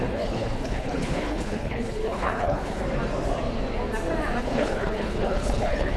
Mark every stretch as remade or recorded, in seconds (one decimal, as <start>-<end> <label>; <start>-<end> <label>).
0.0-2.8 remade; 2.8-4.4 recorded; 4.4-6.0 remade